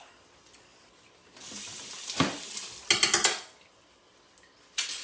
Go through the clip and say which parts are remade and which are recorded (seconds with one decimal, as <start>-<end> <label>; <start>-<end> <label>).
0.0-5.0 recorded